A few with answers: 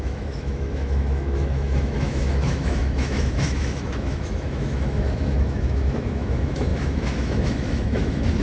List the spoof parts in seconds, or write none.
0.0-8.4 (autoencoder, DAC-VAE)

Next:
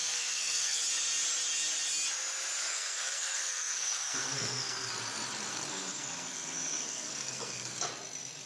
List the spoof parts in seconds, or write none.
0.0-0.8 (codec, SNAC); 2.7-4.9; 5.5-7.9

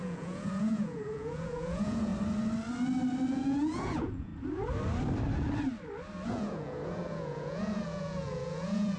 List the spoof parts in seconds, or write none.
0.0-2.1 (vocoder, Vocos); 3.3-4.3; 6.3-9.0

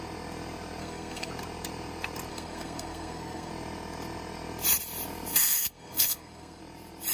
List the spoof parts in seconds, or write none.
0.8-1.3 (codec, SNAC); 2.3-3.5; 5.3-6.6

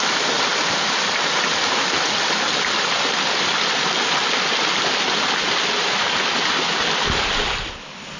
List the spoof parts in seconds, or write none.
none

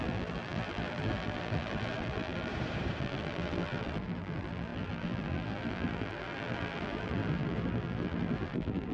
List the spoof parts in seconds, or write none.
0.0-2.5 (vocoder, BigVGAN v2); 3.0-8.9

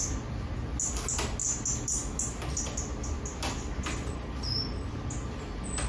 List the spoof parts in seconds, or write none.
none

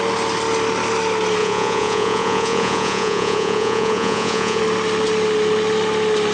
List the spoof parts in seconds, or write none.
1.4-4.6 (vocoder, Vocos)